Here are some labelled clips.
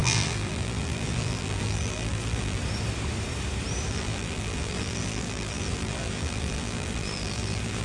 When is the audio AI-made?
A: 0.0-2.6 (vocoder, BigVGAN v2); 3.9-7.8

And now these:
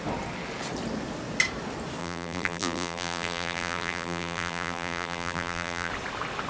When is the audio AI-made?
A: 2.0-5.9 (vocoder, BigVGAN v2)

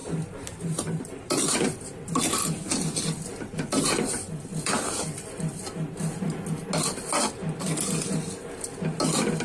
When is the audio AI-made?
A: 0.0-2.2 (vocoder, BigVGAN v2)

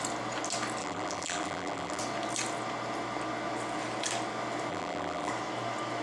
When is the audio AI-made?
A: 0.8-2.0 (vocoder, BigVGAN v2); 4.7-5.3

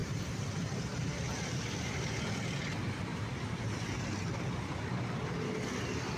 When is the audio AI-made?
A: 0.0-1.1 (vocoder, BigVGAN v2); 3.1-3.7

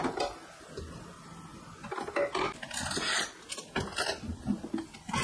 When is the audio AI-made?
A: none

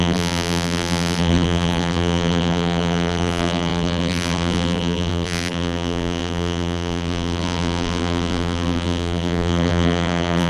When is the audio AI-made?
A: 0.0-10.5 (vocoder, BigVGAN v2)

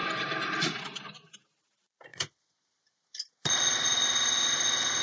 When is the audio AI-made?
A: 0.0-0.8 (vocoder, BigVGAN v2); 2.1-3.2